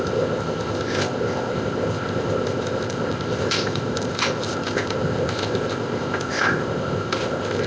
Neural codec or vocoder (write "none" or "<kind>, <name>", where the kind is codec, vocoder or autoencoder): codec, ZipCodec